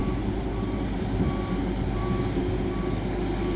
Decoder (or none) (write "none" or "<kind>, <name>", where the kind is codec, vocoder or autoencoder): none